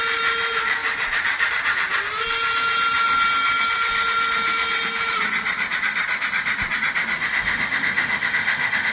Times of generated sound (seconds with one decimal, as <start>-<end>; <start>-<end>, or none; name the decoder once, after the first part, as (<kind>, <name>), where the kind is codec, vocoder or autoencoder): 7.2-8.9 (autoencoder, DAC-VAE)